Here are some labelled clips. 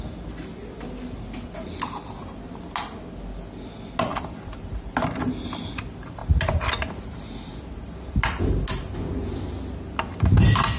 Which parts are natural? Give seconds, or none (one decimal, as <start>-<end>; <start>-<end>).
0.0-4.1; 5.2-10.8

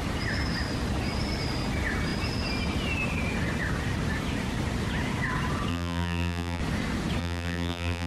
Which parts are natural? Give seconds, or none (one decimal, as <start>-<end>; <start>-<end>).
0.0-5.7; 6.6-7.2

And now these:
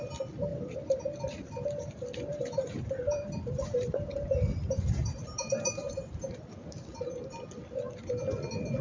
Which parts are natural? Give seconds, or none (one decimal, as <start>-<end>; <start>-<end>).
0.0-0.5; 1.0-2.3; 6.0-8.8

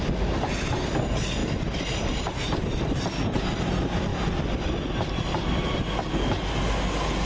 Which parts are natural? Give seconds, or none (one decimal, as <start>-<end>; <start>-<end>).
0.0-1.4; 2.3-4.1; 6.3-7.3

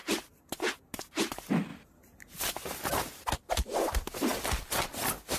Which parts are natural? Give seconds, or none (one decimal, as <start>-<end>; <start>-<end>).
0.0-5.4